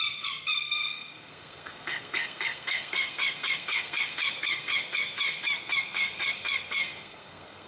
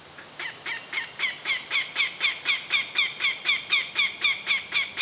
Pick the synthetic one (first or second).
first